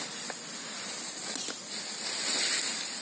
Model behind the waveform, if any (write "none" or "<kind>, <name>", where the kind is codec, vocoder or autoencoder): none